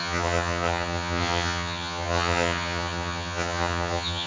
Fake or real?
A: fake